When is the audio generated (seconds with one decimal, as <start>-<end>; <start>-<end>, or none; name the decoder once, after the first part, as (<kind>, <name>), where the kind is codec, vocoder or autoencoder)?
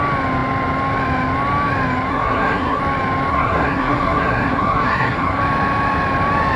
2.1-2.8 (codec, SNAC); 3.3-5.4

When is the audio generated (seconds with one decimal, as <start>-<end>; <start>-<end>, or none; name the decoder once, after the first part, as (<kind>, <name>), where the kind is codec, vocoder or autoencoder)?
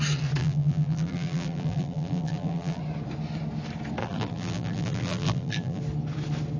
0.4-2.8 (vocoder, BigVGAN v2); 4.0-5.8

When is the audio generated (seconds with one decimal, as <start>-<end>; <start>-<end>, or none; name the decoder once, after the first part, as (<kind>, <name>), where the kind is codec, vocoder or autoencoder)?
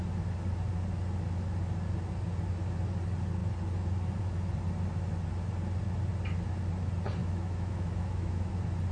7.2-8.5 (autoencoder, DAC-VAE)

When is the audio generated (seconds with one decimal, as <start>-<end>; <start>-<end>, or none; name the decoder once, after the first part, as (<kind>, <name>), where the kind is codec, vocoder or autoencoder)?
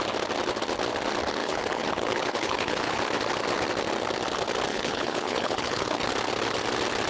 1.4-3.0 (codec, HILCodec); 4.7-6.1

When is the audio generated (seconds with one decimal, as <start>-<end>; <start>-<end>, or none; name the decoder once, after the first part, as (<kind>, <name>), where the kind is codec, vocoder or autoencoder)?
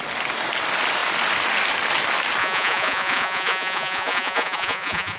2.4-5.2 (vocoder, Vocos)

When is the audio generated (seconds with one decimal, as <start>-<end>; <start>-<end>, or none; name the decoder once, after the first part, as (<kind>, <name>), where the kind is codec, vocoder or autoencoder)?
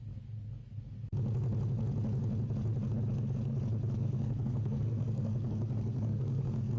4.0-6.8 (codec, SNAC)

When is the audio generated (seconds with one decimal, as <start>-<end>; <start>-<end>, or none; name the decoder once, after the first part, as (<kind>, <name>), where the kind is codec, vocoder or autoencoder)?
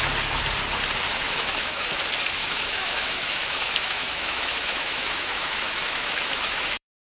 1.1-1.9 (autoencoder, DAC-VAE); 2.4-7.1